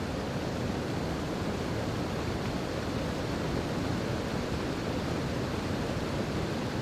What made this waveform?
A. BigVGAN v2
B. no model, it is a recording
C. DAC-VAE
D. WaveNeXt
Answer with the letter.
B